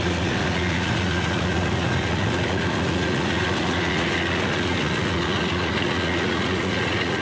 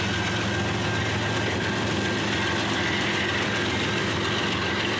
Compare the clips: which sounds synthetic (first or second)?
first